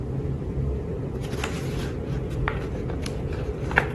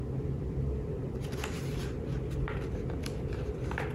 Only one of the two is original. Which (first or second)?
second